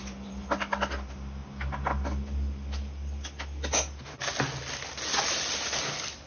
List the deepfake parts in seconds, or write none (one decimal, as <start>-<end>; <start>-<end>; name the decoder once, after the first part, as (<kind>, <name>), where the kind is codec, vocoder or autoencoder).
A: none